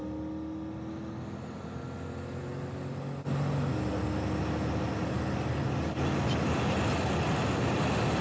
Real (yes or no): yes